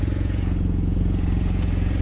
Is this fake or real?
fake